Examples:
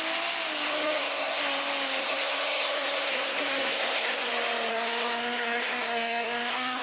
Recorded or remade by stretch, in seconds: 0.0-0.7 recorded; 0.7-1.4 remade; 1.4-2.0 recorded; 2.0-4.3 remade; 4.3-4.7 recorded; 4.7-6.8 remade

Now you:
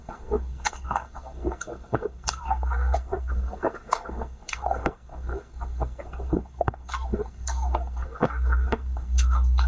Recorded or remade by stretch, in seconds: 0.0-9.7 remade

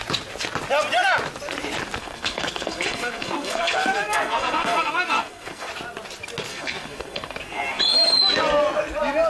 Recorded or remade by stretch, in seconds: 0.0-2.0 recorded; 2.0-5.7 remade; 5.7-6.5 recorded; 6.5-7.8 remade; 7.8-9.3 recorded

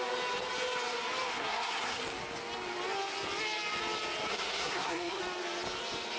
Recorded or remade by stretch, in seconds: 0.0-1.3 recorded; 1.3-2.0 remade; 2.0-4.3 recorded; 4.3-5.2 remade; 5.2-6.2 recorded

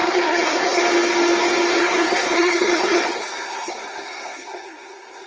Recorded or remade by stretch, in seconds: 0.0-0.8 remade; 0.8-1.8 recorded; 1.8-5.3 remade